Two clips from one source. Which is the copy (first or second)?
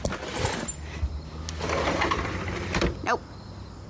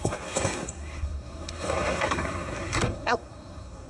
second